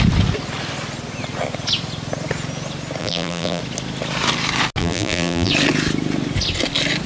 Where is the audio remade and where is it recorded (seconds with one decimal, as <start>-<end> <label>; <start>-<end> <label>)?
0.0-3.0 recorded; 3.0-3.6 remade; 3.6-4.8 recorded; 4.8-5.5 remade; 5.5-7.1 recorded